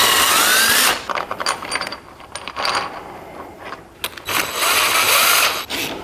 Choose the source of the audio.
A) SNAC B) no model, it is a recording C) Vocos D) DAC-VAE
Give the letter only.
B